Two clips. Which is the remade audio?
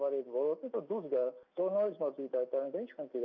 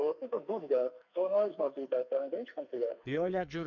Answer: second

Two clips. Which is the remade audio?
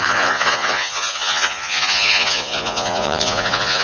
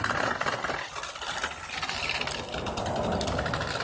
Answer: first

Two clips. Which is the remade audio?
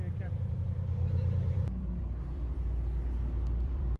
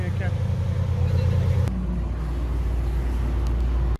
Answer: first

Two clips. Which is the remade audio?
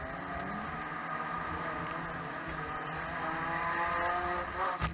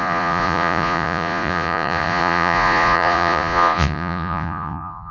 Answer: second